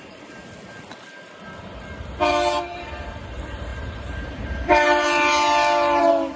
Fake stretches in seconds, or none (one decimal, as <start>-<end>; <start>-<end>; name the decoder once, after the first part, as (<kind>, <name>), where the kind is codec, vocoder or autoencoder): 0.0-0.4 (vocoder, BigVGAN v2); 2.3-6.4